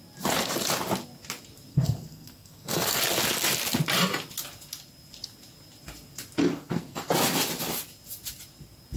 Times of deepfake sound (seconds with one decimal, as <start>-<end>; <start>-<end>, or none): 1.7-3.0; 6.4-7.1